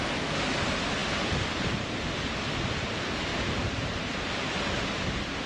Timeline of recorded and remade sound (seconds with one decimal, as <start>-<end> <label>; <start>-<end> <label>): 0.0-3.3 recorded; 3.3-4.4 remade; 4.4-5.5 recorded